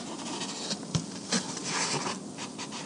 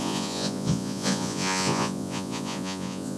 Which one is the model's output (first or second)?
second